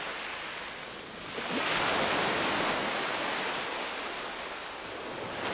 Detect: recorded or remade recorded